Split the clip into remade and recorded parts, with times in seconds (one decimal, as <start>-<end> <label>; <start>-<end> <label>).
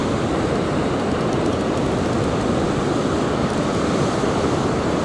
0.0-5.0 remade